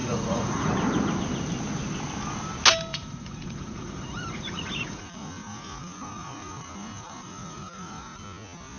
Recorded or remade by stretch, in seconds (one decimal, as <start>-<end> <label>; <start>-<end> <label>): 0.0-0.7 remade; 0.7-2.9 recorded; 2.9-8.2 remade; 8.2-8.8 recorded

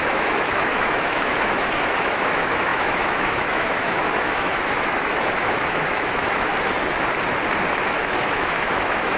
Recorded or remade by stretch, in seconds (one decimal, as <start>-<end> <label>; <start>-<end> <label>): 0.0-6.5 remade; 6.5-7.9 recorded; 7.9-9.2 remade

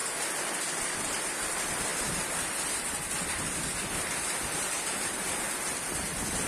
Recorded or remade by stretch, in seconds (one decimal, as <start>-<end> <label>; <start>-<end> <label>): 0.0-1.0 recorded; 1.0-6.5 remade

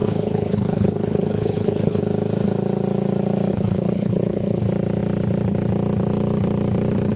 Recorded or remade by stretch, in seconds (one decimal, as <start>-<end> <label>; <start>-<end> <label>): 0.0-2.0 remade; 2.0-3.5 recorded; 3.5-4.6 remade; 4.6-7.2 recorded